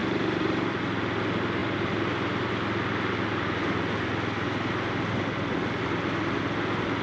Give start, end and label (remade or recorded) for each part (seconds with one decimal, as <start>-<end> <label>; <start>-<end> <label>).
0.0-0.8 remade; 0.8-1.6 recorded; 1.6-2.5 remade; 2.5-7.0 recorded